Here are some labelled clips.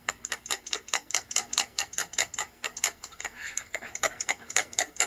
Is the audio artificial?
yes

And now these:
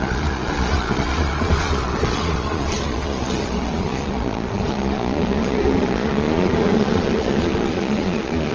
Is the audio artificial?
yes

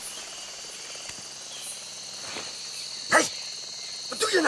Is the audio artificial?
no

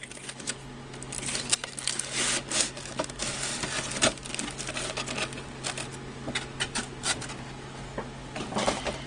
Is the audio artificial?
no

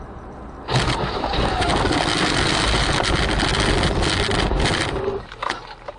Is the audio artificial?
no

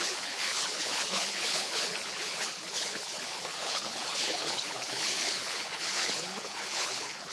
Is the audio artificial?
yes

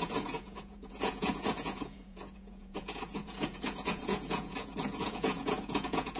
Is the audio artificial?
yes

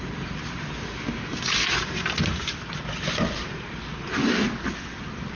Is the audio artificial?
no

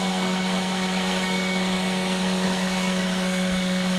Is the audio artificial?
yes